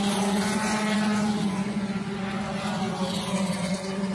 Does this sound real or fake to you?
fake